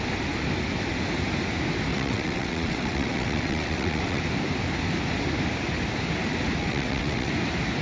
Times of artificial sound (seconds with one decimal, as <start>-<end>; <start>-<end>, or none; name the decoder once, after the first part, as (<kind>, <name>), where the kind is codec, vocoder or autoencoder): 1.9-4.2 (vocoder, WaveNeXt); 6.6-7.3

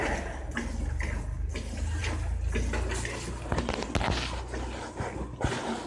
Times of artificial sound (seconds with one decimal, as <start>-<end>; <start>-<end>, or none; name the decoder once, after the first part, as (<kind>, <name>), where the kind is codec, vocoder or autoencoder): none

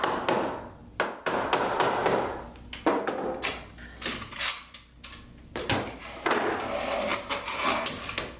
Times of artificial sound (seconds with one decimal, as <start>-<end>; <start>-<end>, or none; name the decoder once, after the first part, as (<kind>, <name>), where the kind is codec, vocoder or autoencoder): none